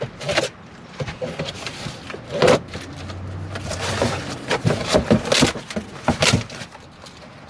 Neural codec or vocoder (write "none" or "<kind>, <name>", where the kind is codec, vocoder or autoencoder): none